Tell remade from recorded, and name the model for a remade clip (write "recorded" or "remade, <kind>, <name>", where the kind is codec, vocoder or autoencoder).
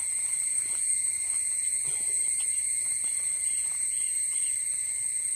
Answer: remade, vocoder, BigVGAN v2